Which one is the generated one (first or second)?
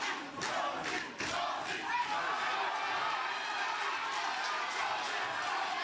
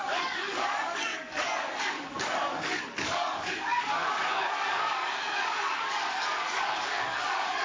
second